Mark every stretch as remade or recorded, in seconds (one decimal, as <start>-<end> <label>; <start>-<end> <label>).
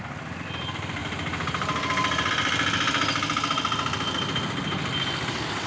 0.0-5.7 recorded